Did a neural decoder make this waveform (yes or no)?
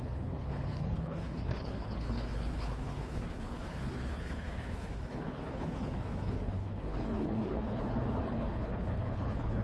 yes